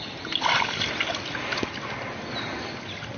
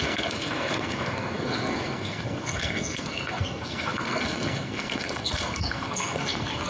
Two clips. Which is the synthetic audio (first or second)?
second